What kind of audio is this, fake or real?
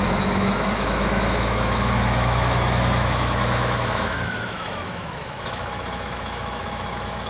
fake